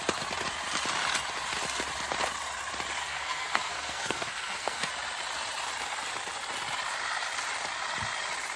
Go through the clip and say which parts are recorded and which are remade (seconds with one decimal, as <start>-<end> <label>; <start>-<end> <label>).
0.0-3.0 recorded; 3.0-4.9 remade; 4.9-8.6 recorded